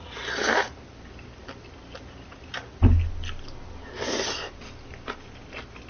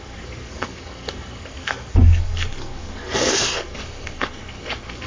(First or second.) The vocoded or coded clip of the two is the second